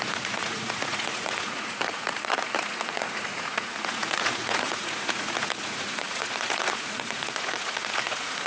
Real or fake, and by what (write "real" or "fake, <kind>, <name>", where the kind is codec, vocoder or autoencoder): fake, vocoder, Vocos